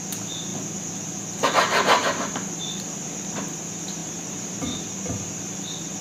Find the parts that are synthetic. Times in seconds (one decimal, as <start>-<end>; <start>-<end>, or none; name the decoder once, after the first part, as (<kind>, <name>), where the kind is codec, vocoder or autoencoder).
4.0-4.8 (vocoder, BigVGAN v2)